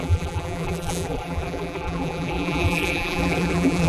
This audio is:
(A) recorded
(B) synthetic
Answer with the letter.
B